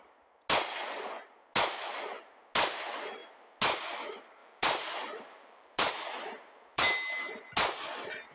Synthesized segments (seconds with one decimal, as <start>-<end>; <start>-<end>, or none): 4.4-5.9